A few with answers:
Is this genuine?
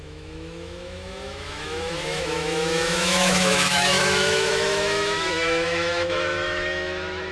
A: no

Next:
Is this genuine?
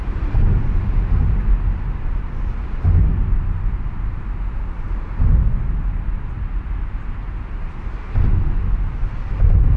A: yes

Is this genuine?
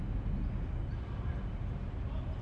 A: yes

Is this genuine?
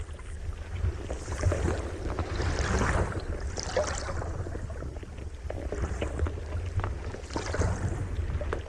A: yes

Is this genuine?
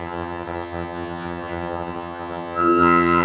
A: no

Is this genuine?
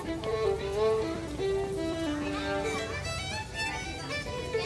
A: yes